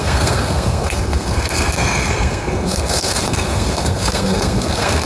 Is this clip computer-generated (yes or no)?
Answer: yes